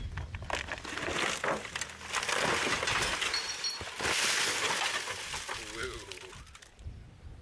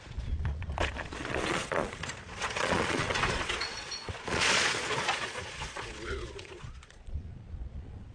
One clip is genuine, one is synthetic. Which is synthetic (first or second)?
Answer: second